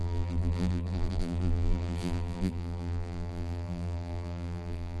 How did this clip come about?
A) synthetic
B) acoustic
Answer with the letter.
A